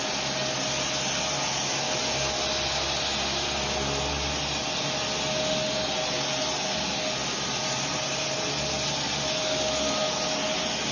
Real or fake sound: real